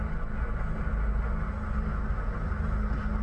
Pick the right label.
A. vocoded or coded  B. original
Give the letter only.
B